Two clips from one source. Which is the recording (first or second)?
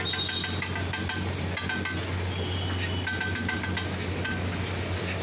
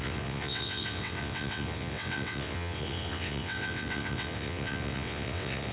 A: first